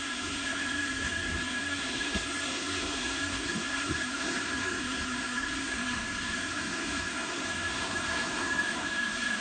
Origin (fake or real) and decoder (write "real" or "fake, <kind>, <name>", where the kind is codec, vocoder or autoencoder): fake, codec, SNAC